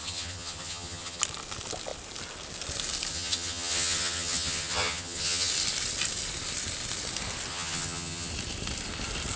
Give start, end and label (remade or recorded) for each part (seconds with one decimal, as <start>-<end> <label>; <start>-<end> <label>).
0.0-1.2 remade; 1.2-3.1 recorded; 3.1-5.5 remade; 5.5-7.5 recorded; 7.5-8.3 remade; 8.3-9.4 recorded